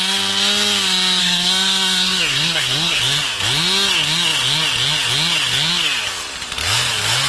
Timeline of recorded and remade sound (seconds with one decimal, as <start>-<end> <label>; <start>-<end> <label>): 0.0-1.2 recorded; 1.2-3.0 remade; 3.0-7.3 recorded